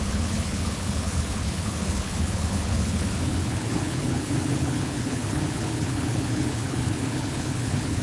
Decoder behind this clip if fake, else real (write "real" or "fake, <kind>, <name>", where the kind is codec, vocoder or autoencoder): fake, codec, HILCodec